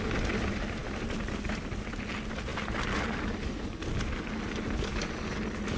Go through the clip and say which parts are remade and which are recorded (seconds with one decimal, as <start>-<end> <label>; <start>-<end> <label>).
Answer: 0.0-5.8 recorded